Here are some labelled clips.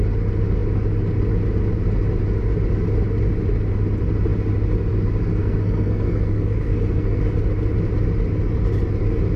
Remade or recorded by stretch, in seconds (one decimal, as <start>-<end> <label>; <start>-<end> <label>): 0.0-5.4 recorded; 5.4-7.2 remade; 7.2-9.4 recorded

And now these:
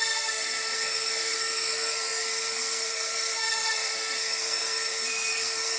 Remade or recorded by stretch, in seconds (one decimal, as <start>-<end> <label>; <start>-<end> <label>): 0.0-5.8 remade

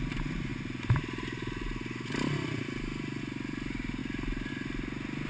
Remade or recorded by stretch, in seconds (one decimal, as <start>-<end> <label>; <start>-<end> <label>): 0.0-5.3 recorded